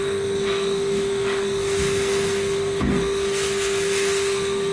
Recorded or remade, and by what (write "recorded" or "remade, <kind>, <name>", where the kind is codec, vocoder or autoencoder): remade, codec, SNAC